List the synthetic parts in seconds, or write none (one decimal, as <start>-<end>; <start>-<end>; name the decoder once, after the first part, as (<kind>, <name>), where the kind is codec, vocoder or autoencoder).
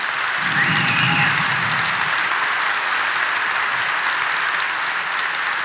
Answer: none